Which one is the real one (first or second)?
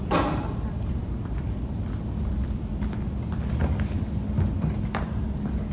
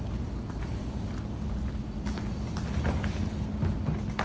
second